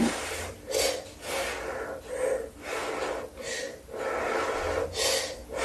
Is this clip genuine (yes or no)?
yes